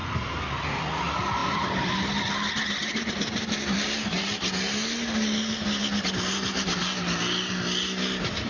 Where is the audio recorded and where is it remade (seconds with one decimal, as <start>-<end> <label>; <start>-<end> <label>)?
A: 0.0-8.5 recorded